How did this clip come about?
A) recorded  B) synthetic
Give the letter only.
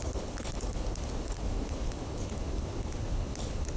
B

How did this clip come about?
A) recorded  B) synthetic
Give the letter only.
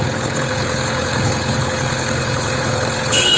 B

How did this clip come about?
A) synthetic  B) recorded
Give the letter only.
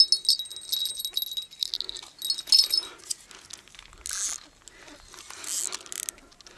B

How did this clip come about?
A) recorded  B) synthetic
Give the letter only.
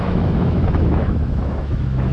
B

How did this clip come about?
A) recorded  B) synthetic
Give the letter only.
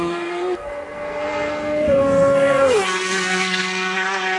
B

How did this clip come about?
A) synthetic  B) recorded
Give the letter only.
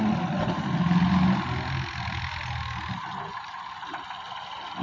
B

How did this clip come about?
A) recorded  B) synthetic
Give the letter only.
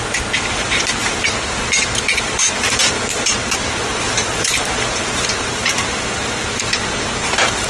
B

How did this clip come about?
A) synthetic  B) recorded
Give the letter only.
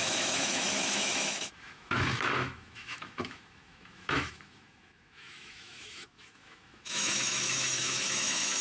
A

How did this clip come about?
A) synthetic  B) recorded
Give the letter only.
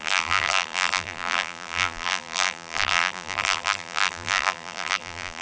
A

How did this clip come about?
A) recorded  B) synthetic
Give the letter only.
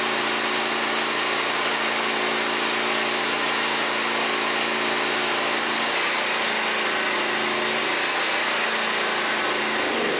A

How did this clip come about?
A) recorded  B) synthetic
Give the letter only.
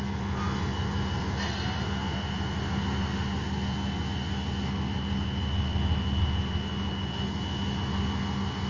A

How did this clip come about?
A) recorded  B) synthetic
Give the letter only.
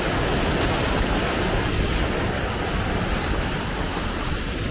A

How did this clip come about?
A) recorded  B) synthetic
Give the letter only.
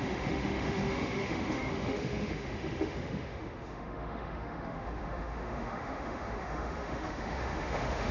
B